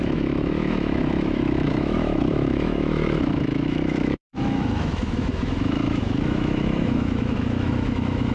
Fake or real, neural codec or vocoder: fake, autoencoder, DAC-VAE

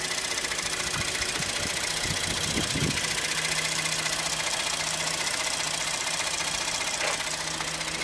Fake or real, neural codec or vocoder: real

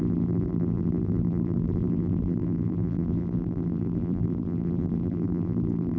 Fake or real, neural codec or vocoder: fake, vocoder, BigVGAN v2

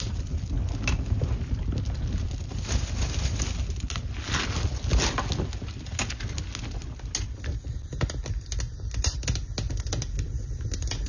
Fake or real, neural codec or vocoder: real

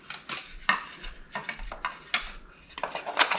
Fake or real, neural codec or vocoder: real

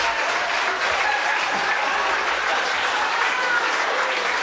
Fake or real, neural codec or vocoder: real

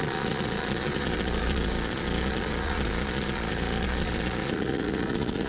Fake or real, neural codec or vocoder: fake, vocoder, Vocos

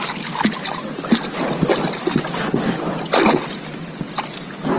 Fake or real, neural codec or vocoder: real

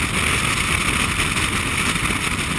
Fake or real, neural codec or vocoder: real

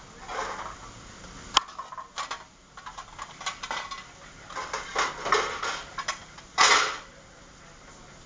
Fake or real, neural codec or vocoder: real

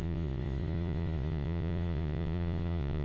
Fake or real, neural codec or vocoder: fake, vocoder, Vocos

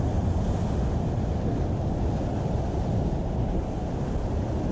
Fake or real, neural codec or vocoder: real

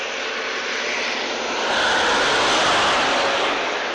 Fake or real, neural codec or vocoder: real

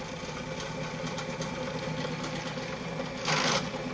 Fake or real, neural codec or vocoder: real